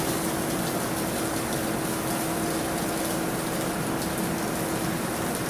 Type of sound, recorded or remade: recorded